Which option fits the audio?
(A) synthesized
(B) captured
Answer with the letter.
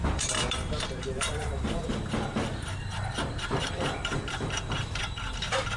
A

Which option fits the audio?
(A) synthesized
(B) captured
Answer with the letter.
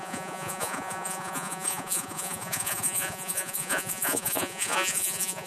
A